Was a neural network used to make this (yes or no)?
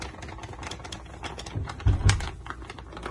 no